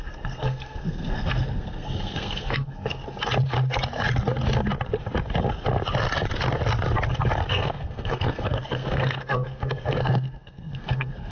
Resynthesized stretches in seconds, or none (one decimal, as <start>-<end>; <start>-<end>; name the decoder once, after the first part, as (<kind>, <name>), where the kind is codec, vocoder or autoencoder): 0.0-3.0 (codec, SNAC); 7.5-11.3